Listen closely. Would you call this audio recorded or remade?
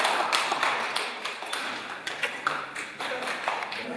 remade